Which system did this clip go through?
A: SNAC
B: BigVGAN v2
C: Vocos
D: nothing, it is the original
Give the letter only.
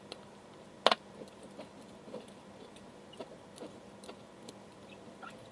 D